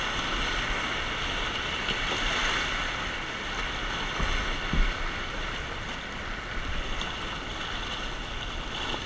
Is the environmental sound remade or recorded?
recorded